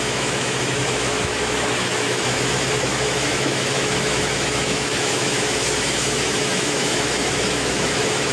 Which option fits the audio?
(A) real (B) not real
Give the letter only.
B